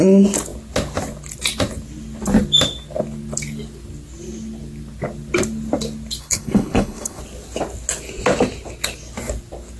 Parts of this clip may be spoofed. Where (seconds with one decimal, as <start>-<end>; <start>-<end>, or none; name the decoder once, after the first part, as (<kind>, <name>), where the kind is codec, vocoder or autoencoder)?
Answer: 6.2-7.2 (codec, HILCodec)